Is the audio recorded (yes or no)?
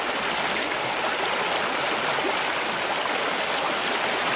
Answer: yes